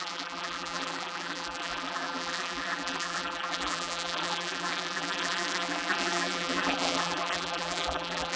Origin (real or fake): fake